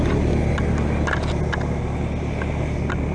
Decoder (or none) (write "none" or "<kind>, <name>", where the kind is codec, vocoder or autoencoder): none